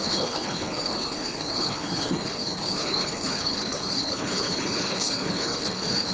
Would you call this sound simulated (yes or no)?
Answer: yes